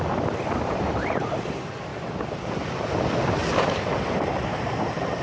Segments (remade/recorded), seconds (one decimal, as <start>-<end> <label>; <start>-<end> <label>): 0.0-1.9 recorded; 1.9-2.9 remade; 2.9-3.4 recorded; 3.4-5.2 remade